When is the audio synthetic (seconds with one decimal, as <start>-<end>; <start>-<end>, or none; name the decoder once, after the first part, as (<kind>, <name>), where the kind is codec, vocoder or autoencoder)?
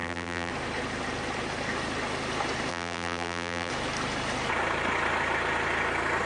0.0-0.5 (vocoder, BigVGAN v2); 2.7-3.7